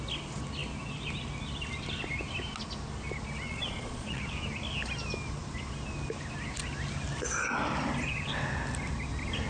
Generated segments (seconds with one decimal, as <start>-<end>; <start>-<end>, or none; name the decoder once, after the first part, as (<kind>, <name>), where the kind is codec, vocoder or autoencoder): 3.5-4.2 (vocoder, Vocos)